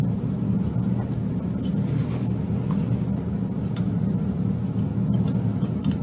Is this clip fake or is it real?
real